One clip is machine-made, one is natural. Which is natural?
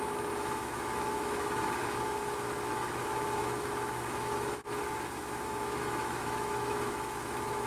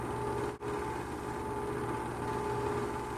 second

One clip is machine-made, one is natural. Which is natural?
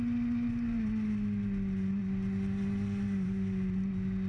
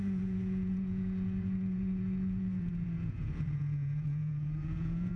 first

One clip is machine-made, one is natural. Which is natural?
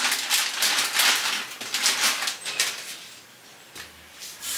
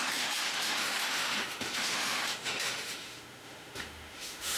first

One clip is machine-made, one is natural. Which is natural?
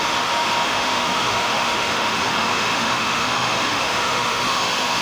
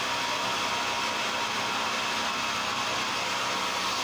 second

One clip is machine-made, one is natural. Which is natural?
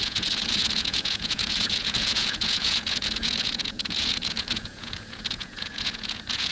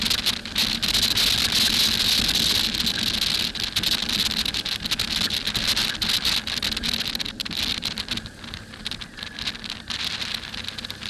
second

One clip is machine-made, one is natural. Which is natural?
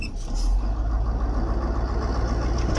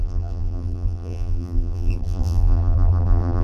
first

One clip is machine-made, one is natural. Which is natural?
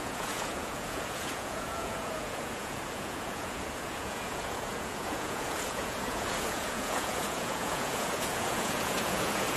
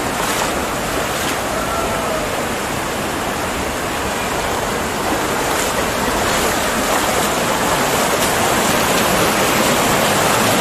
second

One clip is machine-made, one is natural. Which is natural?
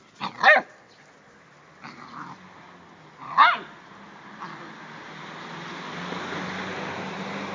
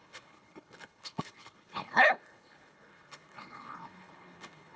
first